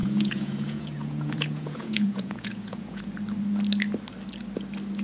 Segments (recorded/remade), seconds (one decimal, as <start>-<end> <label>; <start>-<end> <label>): 0.0-3.0 remade; 3.0-5.0 recorded